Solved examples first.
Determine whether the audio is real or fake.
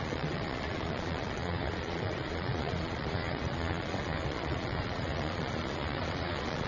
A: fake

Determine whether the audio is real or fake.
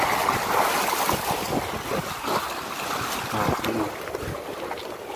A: real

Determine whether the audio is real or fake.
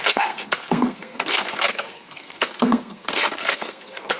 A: fake